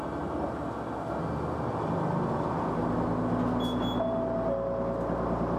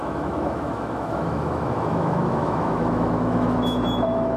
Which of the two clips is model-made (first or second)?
second